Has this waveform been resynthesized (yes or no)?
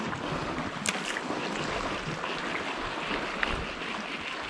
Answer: no